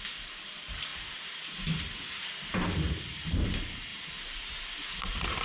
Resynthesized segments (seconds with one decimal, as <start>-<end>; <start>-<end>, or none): 0.0-3.9